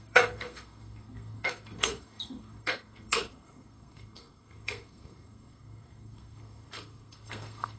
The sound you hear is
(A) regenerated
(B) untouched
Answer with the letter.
A